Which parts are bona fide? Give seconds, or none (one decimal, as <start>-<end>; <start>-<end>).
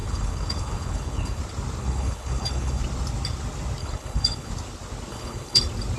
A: 1.4-1.8; 2.8-3.8; 4.5-5.1; 5.6-6.0